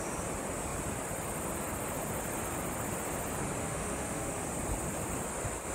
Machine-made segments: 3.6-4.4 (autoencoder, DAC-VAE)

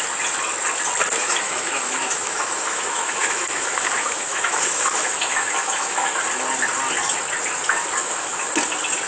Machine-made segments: 1.2-6.2 (autoencoder, DAC-VAE); 8.0-8.5

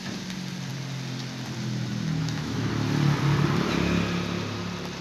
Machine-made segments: 2.2-2.7 (autoencoder, DAC-VAE)

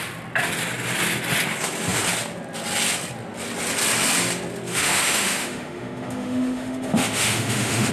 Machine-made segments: 4.7-7.9 (autoencoder, DAC-VAE)

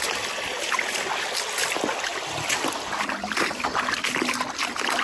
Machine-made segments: none

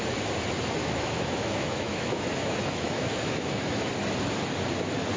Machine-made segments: 0.8-3.9 (autoencoder, DAC-VAE)